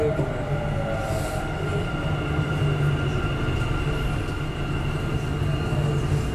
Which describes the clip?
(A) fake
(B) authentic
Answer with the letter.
B